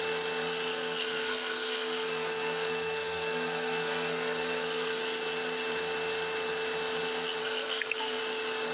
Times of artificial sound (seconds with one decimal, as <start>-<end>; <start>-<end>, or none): 0.7-5.0; 7.4-8.2